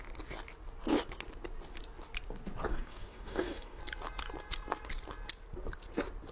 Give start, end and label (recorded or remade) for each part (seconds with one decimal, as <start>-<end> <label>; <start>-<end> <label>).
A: 0.0-2.7 recorded; 2.7-3.8 remade; 3.8-6.3 recorded